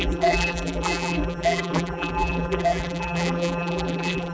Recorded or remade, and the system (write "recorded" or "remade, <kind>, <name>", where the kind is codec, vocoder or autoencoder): remade, vocoder, BigVGAN v2